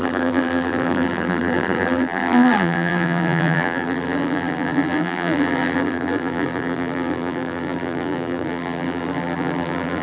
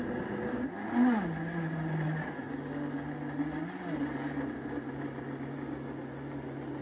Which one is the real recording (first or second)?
second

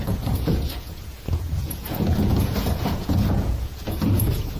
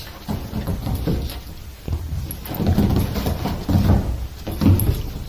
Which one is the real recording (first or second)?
second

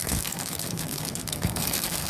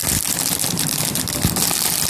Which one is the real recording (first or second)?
second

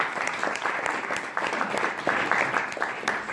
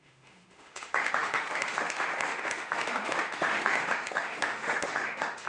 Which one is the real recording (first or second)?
first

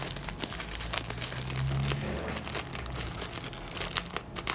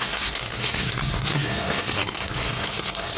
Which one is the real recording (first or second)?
first